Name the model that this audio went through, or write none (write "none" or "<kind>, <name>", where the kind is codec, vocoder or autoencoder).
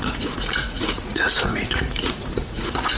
vocoder, Vocos